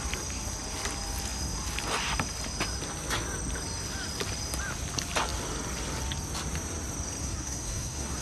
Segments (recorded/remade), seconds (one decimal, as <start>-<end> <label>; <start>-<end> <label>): 0.0-7.2 recorded; 7.2-8.2 remade